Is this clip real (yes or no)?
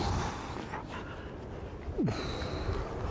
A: yes